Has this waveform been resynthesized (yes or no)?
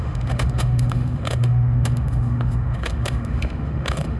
yes